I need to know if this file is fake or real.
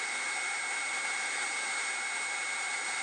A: real